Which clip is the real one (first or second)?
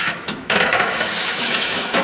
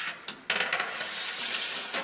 second